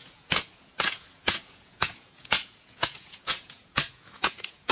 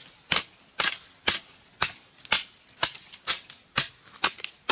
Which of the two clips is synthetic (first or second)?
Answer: first